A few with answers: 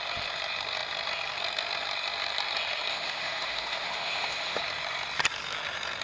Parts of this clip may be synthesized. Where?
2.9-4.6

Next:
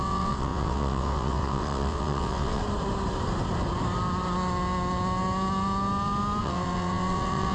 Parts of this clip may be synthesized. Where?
0.0-2.6; 6.4-7.5

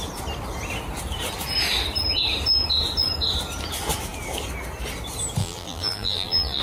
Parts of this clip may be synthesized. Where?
5.4-6.6

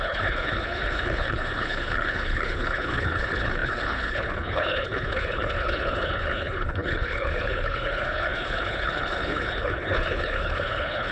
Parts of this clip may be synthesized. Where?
0.0-11.1

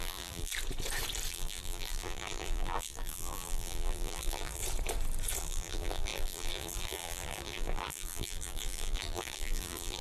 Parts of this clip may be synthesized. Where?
0.0-0.5; 1.3-4.6; 5.4-10.0

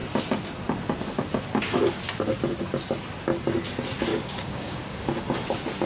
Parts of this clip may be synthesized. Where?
4.1-5.2

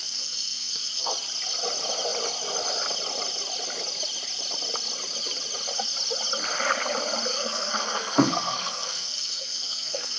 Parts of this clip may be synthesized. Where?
0.0-1.1; 7.3-10.2

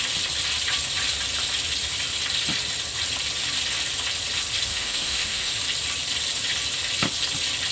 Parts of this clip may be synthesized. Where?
4.7-5.6